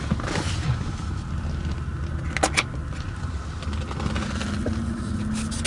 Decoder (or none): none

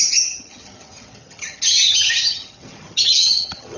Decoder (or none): vocoder, HiFi-GAN